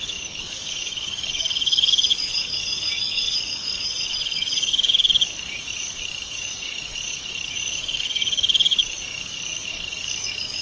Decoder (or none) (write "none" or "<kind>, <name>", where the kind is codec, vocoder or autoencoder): codec, DAC